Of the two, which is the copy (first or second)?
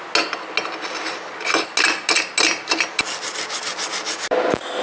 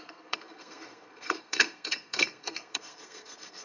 second